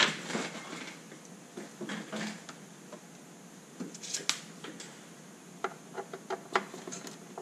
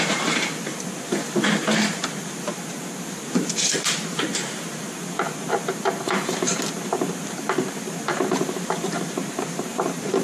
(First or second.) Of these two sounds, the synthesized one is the second